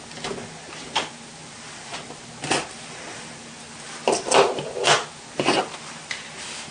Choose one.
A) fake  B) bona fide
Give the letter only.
B